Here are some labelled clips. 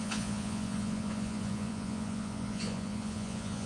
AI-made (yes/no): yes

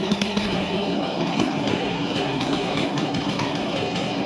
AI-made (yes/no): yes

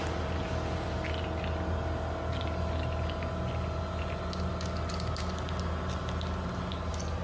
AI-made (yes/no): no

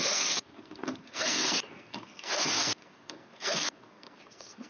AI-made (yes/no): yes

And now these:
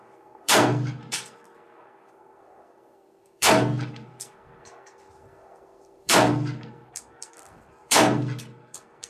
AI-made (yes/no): yes